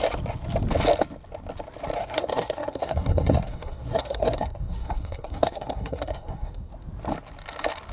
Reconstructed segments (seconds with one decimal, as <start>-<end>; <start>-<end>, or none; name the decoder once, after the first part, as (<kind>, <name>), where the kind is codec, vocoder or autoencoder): 2.0-6.7 (codec, SNAC)